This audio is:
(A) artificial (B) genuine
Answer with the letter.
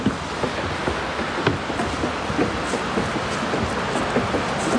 B